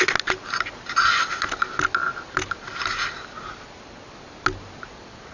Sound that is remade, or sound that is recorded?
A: recorded